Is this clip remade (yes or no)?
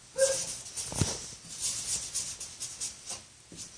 no